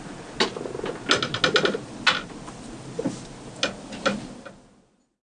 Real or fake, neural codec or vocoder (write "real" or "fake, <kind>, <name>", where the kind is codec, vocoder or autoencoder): real